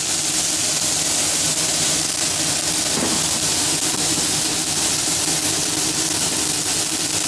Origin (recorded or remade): recorded